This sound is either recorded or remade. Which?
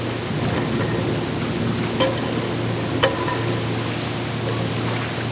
recorded